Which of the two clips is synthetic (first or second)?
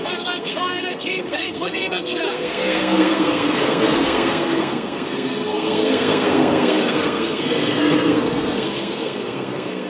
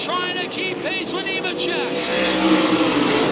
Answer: first